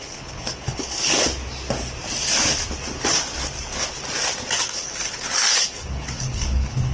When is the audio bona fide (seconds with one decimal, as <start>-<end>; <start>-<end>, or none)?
1.3-4.6